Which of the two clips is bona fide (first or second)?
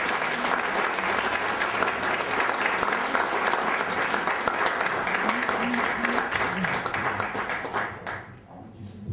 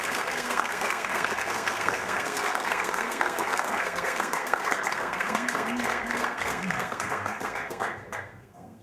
first